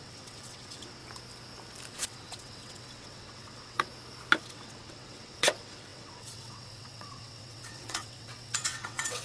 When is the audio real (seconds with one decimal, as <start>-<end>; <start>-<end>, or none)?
1.0-1.9; 3.9-4.4